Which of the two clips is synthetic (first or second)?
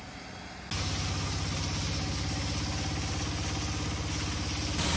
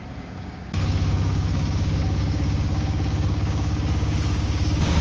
second